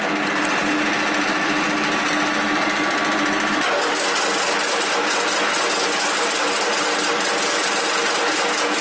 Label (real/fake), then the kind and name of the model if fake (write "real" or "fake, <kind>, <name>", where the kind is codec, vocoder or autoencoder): real